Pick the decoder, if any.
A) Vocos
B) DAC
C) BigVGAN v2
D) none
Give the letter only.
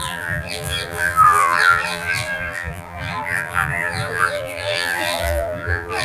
C